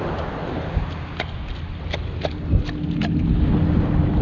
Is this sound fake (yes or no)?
no